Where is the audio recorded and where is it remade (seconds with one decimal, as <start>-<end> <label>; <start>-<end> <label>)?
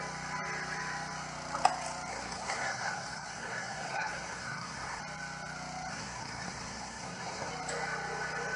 0.0-2.1 recorded; 2.1-5.0 remade; 5.0-5.9 recorded; 5.9-7.5 remade; 7.5-8.6 recorded